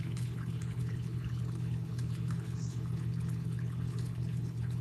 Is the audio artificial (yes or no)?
yes